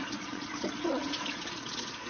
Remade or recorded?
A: remade